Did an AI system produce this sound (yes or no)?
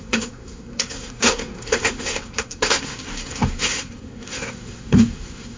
yes